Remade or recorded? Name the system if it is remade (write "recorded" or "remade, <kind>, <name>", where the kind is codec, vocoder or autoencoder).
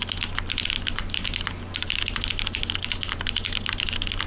recorded